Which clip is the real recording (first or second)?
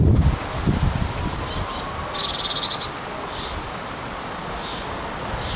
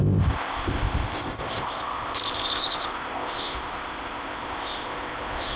first